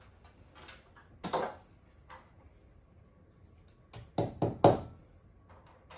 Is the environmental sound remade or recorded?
recorded